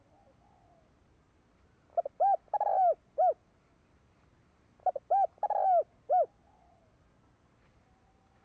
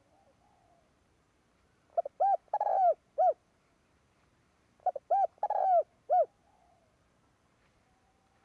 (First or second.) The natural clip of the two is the first